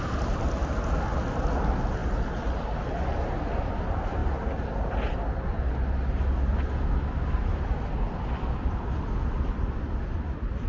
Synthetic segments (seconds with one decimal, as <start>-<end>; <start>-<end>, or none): 4.2-5.7; 7.5-10.7